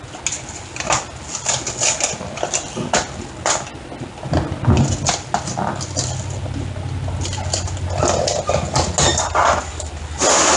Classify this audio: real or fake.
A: real